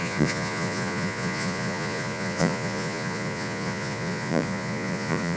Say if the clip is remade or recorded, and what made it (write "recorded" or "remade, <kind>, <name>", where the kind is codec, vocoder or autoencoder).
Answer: remade, vocoder, Vocos